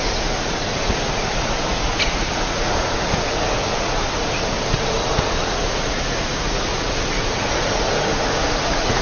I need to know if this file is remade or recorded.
remade